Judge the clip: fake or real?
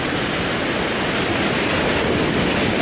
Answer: real